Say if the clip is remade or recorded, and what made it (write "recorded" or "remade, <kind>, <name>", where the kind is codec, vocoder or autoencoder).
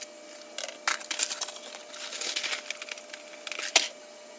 recorded